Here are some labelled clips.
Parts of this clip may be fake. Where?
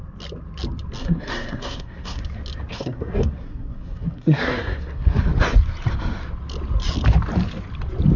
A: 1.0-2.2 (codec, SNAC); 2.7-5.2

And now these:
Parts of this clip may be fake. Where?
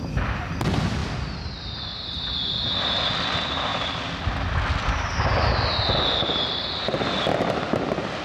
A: none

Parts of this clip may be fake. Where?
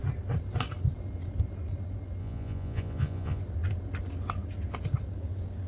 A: 2.2-3.4 (vocoder, Vocos)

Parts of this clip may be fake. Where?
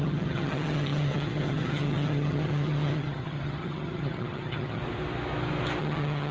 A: 0.0-4.8 (vocoder, HiFi-GAN); 5.8-6.3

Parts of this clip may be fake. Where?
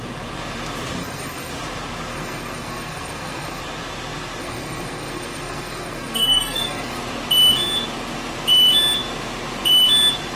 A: 1.0-1.5 (codec, SNAC); 2.1-3.6; 4.4-7.0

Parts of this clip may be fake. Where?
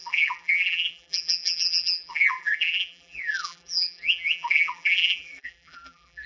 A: 0.0-6.3 (vocoder, BigVGAN v2)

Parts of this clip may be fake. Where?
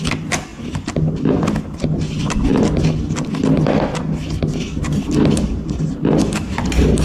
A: none